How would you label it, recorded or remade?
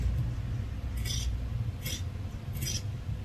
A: recorded